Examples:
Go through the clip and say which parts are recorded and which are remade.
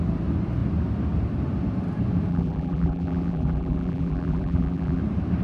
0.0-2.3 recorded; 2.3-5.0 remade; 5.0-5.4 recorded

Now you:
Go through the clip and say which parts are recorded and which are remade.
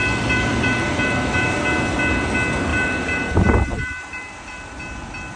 0.0-1.6 remade; 1.6-2.7 recorded; 2.7-4.8 remade; 4.8-5.4 recorded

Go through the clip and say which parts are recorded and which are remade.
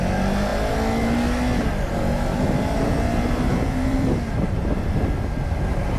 0.0-2.3 recorded; 2.3-6.0 remade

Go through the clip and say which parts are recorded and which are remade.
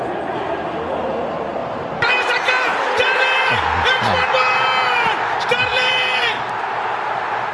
0.0-1.6 recorded; 1.6-2.3 remade; 2.3-5.7 recorded; 5.7-6.5 remade; 6.5-7.5 recorded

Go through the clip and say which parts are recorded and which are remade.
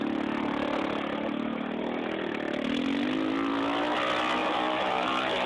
0.0-4.4 recorded; 4.4-5.5 remade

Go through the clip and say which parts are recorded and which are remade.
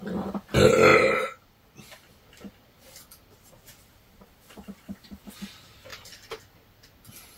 0.0-5.9 recorded; 5.9-6.4 remade; 6.4-7.4 recorded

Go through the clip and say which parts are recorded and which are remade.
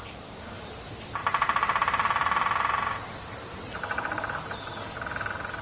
0.0-1.2 recorded; 1.2-4.6 remade; 4.6-5.6 recorded